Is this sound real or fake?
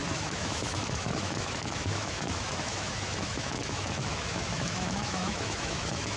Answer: fake